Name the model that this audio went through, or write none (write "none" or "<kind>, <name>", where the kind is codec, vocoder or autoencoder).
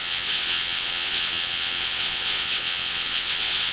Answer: vocoder, WaveNeXt